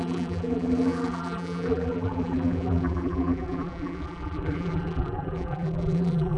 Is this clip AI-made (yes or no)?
yes